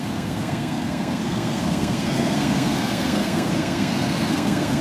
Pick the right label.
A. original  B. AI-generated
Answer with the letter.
B